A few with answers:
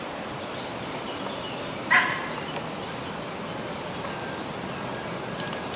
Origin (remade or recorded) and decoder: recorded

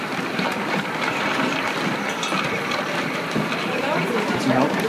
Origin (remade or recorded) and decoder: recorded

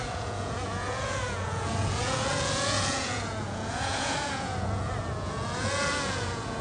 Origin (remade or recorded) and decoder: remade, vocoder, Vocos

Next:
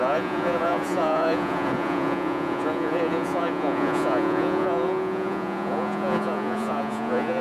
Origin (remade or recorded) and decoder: remade, vocoder, Vocos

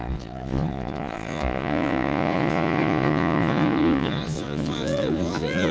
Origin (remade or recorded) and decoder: remade, vocoder, Vocos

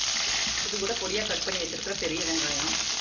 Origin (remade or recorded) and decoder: recorded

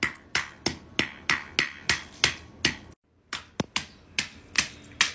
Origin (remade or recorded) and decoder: recorded